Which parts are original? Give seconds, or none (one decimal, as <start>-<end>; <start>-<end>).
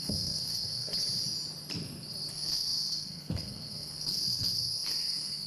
0.9-2.3